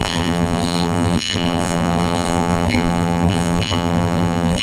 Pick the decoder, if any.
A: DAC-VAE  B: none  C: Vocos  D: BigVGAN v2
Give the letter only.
D